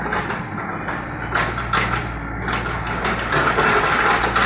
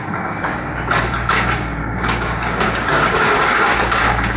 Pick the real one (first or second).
first